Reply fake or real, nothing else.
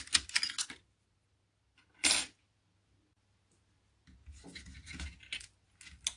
real